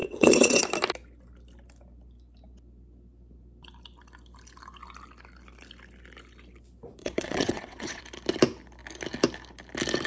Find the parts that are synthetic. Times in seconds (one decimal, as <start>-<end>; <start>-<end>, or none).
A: 0.0-0.6; 7.0-8.0

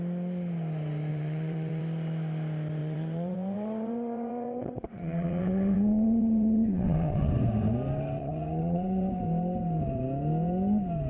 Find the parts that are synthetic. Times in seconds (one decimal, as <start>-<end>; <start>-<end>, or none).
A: 1.1-1.8; 2.8-7.3; 8.2-9.1

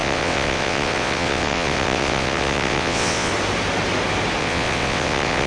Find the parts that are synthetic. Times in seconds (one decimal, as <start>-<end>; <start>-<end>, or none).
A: 0.0-3.3; 4.4-5.5

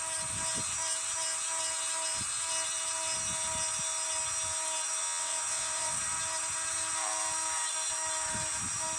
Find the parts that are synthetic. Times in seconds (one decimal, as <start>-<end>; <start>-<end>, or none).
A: 5.0-6.0